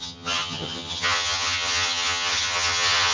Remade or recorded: remade